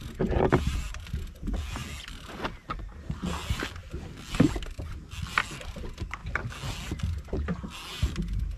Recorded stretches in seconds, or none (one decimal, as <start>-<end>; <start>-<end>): 0.0-8.6